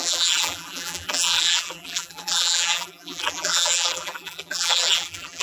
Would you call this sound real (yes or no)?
no